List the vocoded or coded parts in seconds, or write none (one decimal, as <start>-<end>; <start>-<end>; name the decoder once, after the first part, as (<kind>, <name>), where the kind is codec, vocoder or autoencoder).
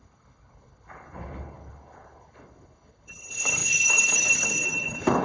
0.0-5.2 (codec, HILCodec)